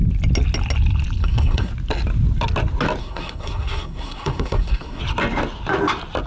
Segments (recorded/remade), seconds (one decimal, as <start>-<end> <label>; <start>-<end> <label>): 0.0-1.2 recorded; 1.2-1.7 remade; 1.7-3.0 recorded; 3.0-5.0 remade; 5.0-6.3 recorded